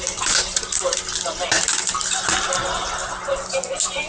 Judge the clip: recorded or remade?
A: recorded